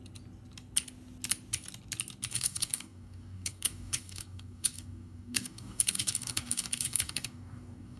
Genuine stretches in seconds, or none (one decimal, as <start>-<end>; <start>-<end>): 0.0-2.3